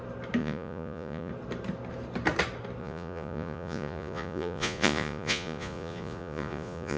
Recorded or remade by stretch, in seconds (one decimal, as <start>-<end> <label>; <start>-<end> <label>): 0.0-0.4 recorded; 0.4-1.3 remade; 1.3-2.8 recorded; 2.8-7.0 remade